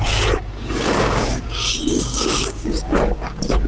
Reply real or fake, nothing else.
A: fake